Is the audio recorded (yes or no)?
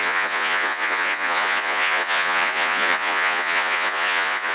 no